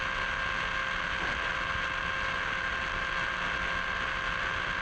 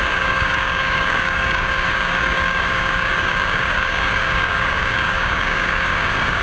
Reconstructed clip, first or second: second